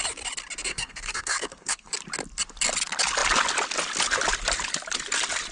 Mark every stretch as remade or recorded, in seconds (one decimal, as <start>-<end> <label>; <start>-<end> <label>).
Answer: 0.0-0.7 recorded; 0.7-1.9 remade; 1.9-5.5 recorded